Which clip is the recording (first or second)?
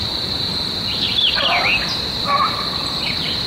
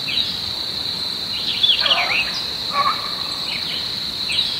first